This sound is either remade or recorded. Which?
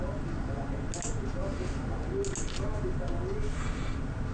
recorded